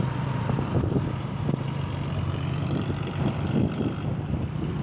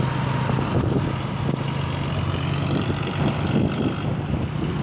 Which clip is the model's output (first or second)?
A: first